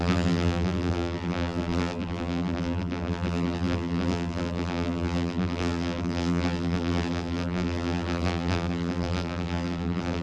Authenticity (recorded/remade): remade